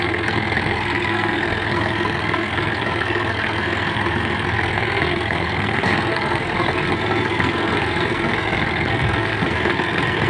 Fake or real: fake